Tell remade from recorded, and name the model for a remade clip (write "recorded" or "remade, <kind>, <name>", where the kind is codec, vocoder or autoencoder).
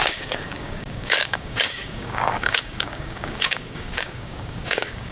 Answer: remade, codec, DAC